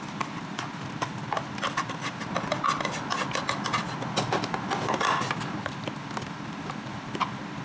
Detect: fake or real real